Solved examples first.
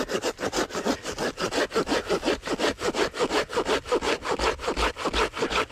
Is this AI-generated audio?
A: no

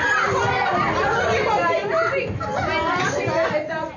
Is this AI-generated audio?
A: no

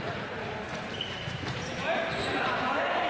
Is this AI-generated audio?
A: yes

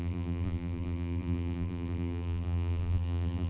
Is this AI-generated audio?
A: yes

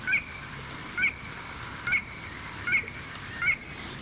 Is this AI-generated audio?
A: yes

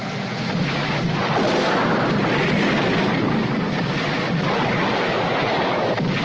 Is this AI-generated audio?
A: no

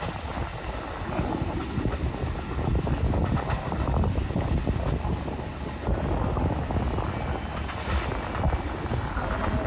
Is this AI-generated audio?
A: no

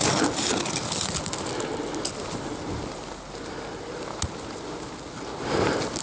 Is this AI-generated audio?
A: no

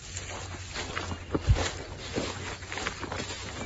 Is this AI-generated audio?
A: no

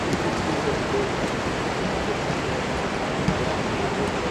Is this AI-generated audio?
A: no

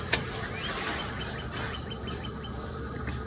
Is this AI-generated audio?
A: yes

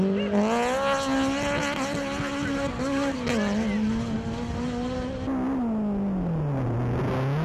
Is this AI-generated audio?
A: no